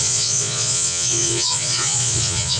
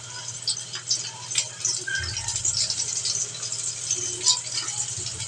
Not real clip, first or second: first